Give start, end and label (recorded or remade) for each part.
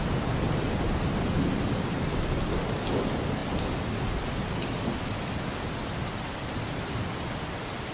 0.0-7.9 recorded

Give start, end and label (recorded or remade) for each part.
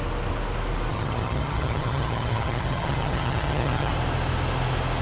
0.0-0.9 recorded; 0.9-3.9 remade; 3.9-5.0 recorded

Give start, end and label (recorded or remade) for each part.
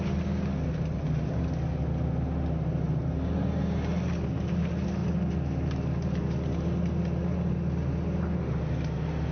0.0-9.3 recorded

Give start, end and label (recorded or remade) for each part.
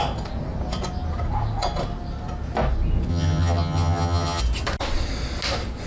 0.0-3.1 recorded; 3.1-4.4 remade; 4.4-5.9 recorded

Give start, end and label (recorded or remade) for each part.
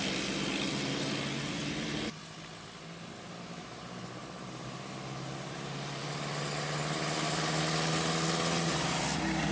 0.0-9.5 recorded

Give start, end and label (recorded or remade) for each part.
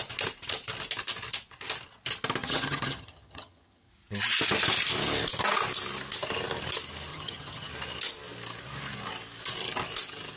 0.0-2.4 recorded; 2.4-3.9 remade; 3.9-7.1 recorded; 7.1-7.7 remade; 7.7-10.4 recorded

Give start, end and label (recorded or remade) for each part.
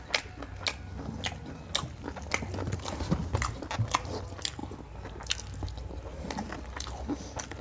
0.0-7.6 recorded